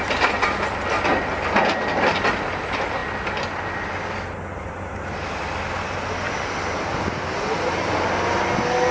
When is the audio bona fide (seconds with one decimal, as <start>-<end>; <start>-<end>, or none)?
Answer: 0.0-8.9

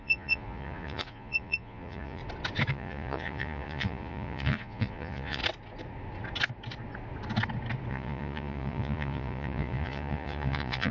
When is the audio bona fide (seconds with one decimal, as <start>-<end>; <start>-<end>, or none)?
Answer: 2.2-2.7; 5.4-7.9

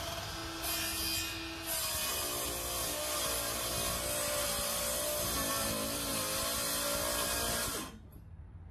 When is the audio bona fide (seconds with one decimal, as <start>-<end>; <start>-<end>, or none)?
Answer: 0.4-5.5; 6.1-8.1

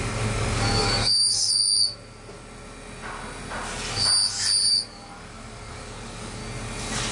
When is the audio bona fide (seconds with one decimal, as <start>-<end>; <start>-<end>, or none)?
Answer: 1.6-4.7; 6.4-7.1

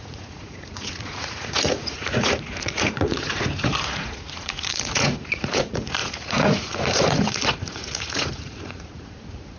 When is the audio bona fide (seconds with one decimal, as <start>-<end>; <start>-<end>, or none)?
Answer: none